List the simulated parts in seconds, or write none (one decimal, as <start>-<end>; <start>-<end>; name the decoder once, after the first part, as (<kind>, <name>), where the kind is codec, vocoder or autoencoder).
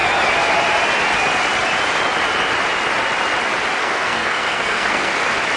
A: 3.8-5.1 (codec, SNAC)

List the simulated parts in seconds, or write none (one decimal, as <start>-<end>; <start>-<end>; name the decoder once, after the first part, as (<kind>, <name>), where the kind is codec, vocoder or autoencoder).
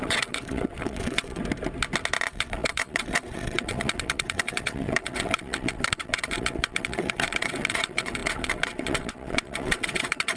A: 0.0-1.4 (vocoder, WaveNeXt); 2.2-10.4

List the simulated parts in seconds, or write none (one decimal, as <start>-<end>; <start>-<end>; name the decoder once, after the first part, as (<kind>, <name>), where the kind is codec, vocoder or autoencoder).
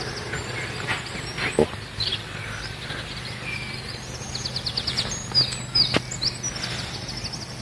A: 0.4-1.1 (vocoder, BigVGAN v2); 2.1-4.3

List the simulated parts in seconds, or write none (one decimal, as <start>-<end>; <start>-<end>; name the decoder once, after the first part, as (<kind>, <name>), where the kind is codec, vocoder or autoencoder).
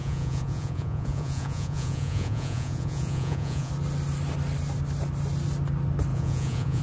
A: 0.0-3.7 (vocoder, Vocos); 6.1-6.8